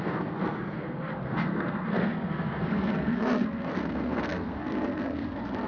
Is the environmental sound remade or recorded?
remade